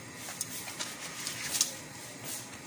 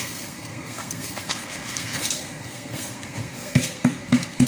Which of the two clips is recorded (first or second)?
first